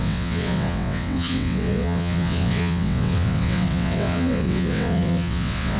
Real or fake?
fake